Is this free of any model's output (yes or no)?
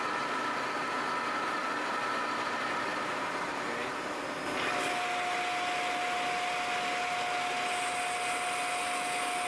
yes